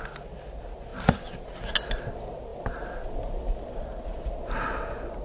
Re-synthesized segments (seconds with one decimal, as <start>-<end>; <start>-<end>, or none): none